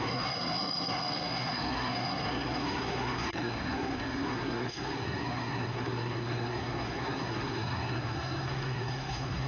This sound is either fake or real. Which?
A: fake